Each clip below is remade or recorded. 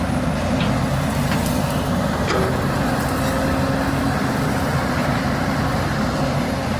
recorded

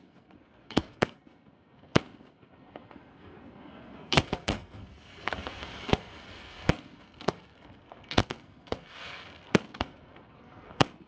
remade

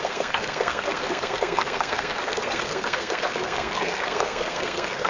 remade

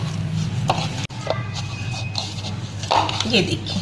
recorded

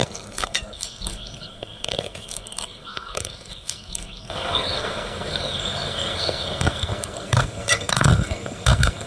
remade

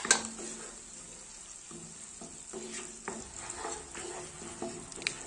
recorded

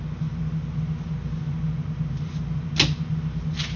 recorded